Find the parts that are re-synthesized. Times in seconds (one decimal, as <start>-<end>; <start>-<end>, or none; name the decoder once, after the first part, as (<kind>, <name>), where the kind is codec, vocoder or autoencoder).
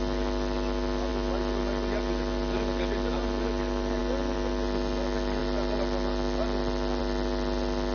none